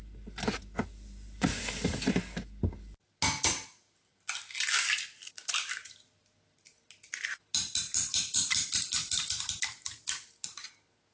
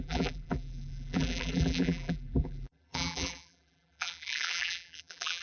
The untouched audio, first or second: first